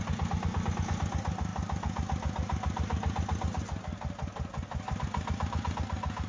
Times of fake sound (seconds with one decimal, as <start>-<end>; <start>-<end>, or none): none